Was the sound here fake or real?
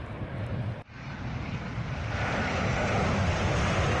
real